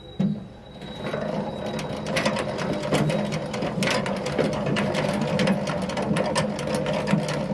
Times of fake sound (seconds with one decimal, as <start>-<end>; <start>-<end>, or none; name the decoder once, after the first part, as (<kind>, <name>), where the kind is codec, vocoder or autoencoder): 0.6-2.9 (vocoder, BigVGAN v2)